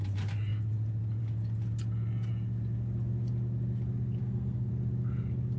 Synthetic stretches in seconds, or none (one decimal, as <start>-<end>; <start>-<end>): 4.2-4.7

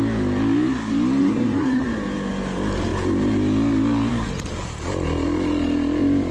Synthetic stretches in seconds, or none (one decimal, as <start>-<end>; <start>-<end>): 1.2-1.8

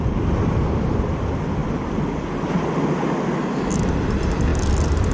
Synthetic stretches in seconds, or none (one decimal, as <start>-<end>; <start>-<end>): none

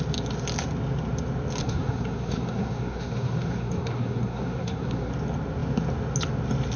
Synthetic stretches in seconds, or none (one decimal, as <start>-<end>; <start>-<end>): 1.6-5.1

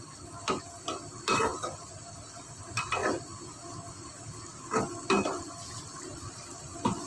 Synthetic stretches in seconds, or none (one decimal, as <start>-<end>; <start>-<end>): none

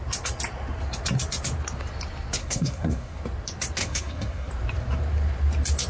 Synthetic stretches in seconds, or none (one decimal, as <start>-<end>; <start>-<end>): 2.4-3.2; 3.8-4.5